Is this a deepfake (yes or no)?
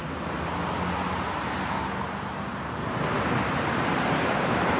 no